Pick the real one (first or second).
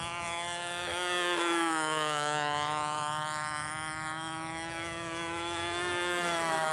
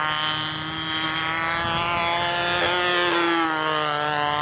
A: second